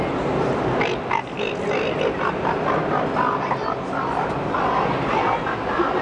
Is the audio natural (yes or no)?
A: yes